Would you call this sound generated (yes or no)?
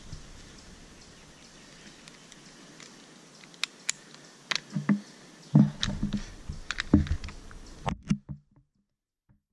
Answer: no